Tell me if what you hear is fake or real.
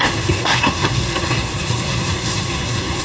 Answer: fake